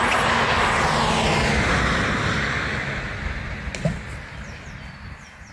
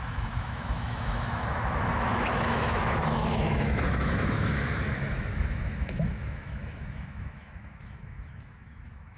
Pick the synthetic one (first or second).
second